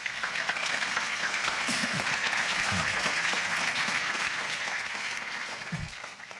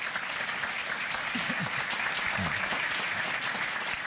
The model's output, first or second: first